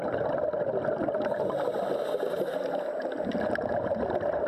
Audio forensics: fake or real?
real